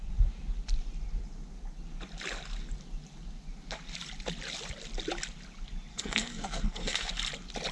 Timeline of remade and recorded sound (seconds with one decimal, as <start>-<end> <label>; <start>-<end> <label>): 0.0-5.9 recorded; 5.9-7.1 remade; 7.1-7.7 recorded